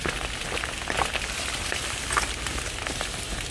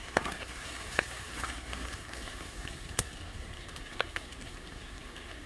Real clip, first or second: first